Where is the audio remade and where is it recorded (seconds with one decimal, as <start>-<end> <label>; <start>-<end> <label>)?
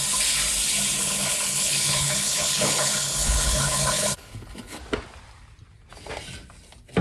0.0-1.0 recorded; 1.0-4.8 remade; 4.8-7.0 recorded